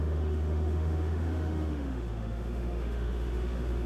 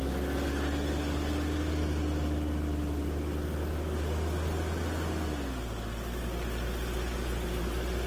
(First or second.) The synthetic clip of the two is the first